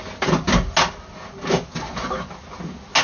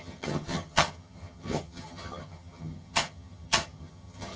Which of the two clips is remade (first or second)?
second